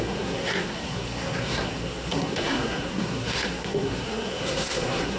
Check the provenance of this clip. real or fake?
fake